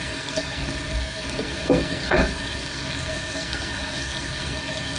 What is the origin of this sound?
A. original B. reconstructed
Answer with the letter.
B